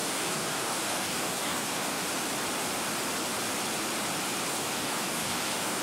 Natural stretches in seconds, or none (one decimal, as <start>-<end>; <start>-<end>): 2.0-4.5